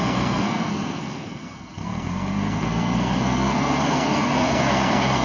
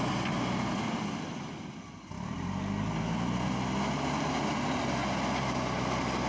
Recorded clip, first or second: second